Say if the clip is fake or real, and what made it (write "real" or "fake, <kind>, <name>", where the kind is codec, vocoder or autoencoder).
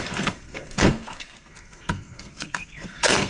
fake, codec, SNAC